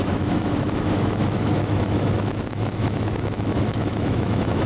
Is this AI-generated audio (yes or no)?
yes